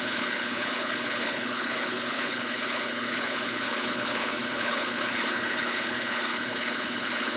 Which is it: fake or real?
fake